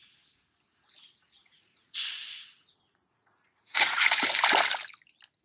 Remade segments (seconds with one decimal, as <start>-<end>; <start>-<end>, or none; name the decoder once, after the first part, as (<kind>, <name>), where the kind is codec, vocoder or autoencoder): 1.4-4.3 (vocoder, Vocos)